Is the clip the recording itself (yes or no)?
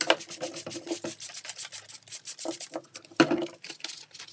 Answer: yes